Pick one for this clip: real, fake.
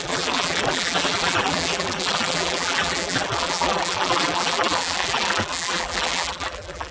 fake